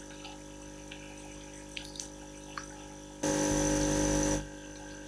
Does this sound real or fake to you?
real